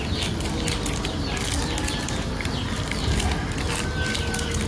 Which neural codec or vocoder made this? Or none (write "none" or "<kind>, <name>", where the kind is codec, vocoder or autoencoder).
none